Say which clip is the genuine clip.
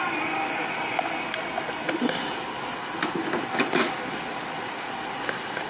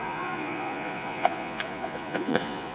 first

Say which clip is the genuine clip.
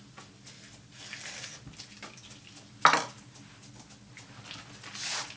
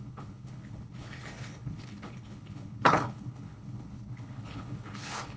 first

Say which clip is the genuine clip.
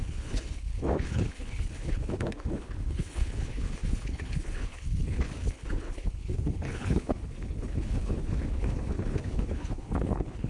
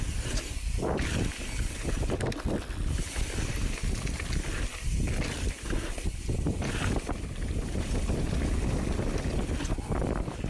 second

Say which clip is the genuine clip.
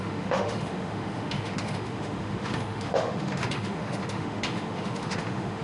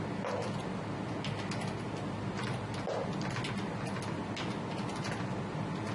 second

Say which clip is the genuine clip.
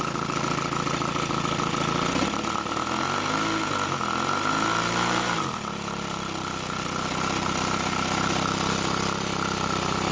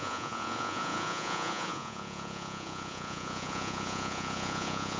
first